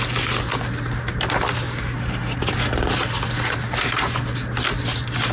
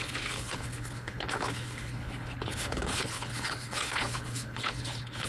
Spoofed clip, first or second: second